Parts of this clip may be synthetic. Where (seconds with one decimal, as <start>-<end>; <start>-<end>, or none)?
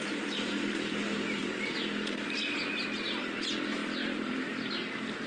none